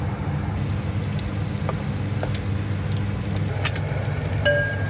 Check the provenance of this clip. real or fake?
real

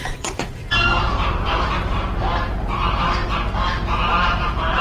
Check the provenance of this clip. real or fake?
fake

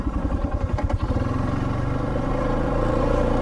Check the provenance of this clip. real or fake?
fake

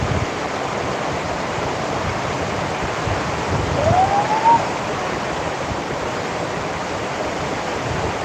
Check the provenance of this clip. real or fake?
real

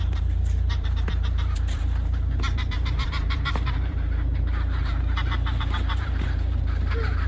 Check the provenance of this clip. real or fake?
fake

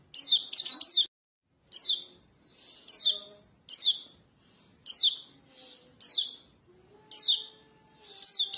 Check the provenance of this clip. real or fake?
real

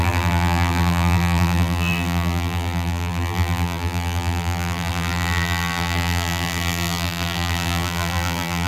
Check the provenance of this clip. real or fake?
fake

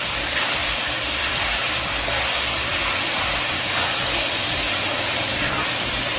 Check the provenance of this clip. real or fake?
fake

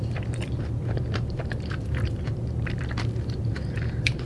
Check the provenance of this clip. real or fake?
fake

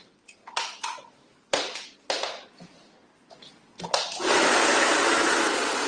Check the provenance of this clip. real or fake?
real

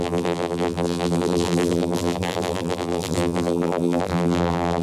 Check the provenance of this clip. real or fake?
fake